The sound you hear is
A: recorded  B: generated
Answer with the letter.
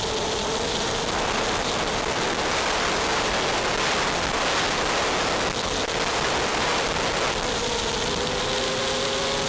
A